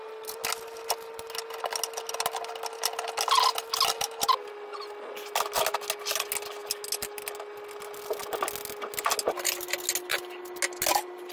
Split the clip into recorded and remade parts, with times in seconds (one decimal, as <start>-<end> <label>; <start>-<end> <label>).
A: 0.0-11.3 recorded